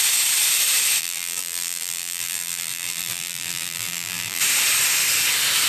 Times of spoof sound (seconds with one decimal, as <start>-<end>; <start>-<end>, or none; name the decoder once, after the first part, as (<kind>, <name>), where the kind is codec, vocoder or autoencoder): 1.0-4.4 (vocoder, BigVGAN v2)